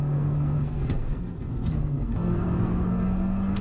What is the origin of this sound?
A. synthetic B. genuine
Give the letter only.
A